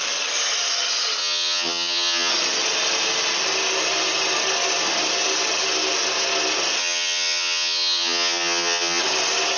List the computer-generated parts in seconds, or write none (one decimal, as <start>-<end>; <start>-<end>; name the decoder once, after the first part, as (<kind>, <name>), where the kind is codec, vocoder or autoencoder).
1.2-2.3 (vocoder, HiFi-GAN); 6.8-9.0